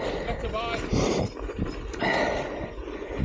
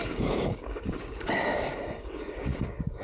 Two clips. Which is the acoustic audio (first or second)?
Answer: first